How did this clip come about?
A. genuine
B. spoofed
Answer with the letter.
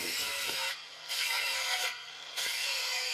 B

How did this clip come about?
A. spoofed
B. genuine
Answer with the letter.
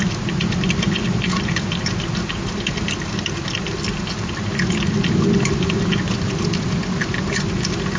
B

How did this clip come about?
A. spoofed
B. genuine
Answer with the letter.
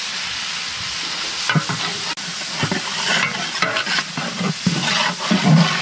B